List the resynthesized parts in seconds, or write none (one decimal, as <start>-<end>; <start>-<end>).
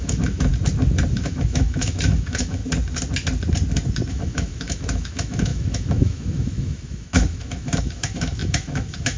0.0-0.5; 1.1-2.6; 4.1-9.2